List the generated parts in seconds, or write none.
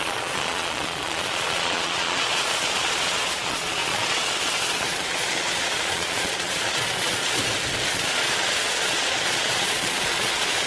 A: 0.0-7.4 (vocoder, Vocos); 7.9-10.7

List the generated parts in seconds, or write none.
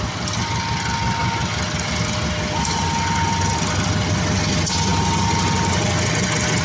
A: none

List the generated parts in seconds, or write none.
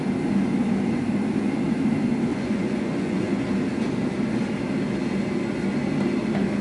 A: 2.3-3.4 (vocoder, Vocos)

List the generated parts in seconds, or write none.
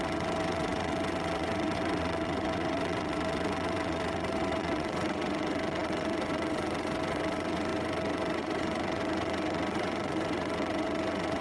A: 0.0-11.4 (vocoder, WaveNeXt)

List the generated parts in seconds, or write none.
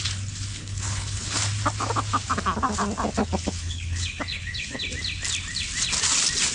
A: 0.5-1.4 (codec, HILCodec); 3.2-4.8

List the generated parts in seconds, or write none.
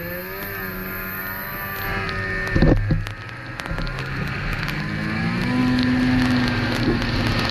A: 4.0-4.8 (codec, SNAC)